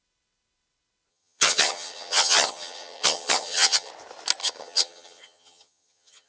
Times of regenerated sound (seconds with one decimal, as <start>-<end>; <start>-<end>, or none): 1.1-3.9; 4.4-6.3

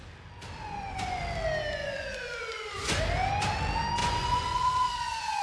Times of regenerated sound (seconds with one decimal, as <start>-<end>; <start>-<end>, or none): 0.6-1.2; 1.8-3.0; 4.0-5.4

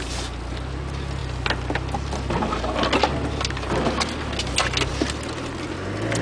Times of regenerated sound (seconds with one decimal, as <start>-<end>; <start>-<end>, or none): none

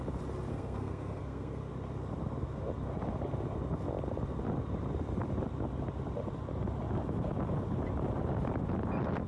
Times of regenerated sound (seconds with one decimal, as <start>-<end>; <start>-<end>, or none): 0.5-1.7

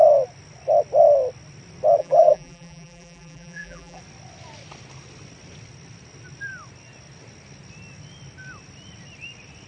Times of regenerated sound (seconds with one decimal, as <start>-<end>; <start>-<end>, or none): 2.0-4.0

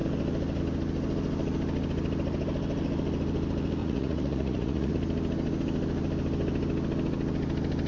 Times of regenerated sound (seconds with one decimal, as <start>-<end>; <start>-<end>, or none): 3.8-4.9

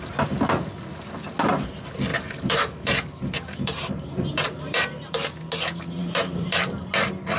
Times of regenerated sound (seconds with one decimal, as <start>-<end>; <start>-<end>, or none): 2.1-5.4; 6.0-6.6